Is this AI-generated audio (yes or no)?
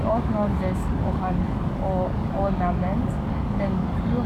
yes